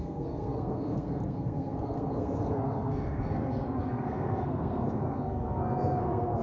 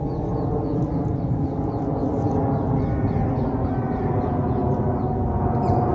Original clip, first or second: second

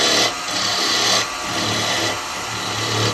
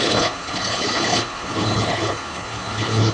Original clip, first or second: first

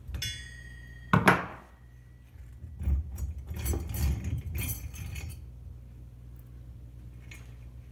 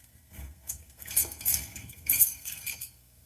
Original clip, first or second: first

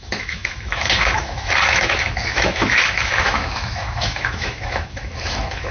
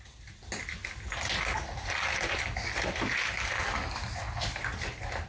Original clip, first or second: second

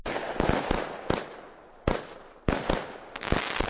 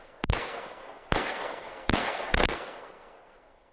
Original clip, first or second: first